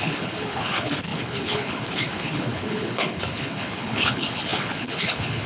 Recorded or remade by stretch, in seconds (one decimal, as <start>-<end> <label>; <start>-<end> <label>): 0.0-5.5 remade